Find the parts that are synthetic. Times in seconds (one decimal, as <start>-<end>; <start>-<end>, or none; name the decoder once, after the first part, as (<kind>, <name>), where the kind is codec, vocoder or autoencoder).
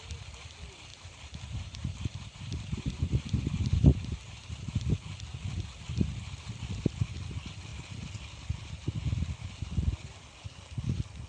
0.9-4.8 (vocoder, BigVGAN v2)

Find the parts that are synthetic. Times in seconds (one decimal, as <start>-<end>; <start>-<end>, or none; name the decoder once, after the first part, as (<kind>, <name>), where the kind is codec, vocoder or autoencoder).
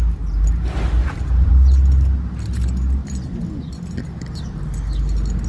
1.0-1.5 (vocoder, BigVGAN v2); 3.0-3.9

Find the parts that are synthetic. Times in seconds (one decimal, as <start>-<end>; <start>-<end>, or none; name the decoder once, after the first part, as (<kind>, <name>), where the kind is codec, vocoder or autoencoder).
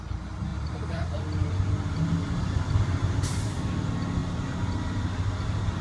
3.0-3.7 (vocoder, BigVGAN v2)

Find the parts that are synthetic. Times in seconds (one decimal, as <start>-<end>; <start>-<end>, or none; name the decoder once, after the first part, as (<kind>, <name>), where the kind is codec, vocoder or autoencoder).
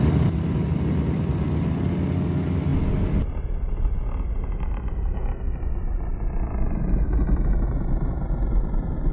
0.0-9.1 (vocoder, BigVGAN v2)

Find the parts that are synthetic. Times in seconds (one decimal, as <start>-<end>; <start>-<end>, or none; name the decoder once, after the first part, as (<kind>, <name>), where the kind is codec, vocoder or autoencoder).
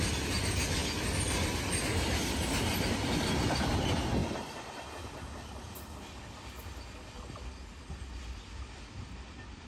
4.2-4.9 (vocoder, BigVGAN v2)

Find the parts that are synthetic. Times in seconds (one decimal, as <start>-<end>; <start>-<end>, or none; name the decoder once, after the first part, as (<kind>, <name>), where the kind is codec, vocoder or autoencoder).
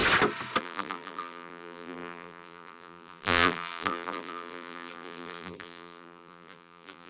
0.6-7.1 (vocoder, BigVGAN v2)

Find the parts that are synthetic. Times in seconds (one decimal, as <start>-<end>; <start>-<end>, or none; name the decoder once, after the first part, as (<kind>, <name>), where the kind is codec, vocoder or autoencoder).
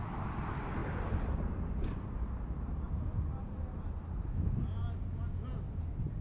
0.8-1.6 (vocoder, BigVGAN v2)